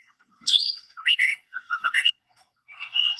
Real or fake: fake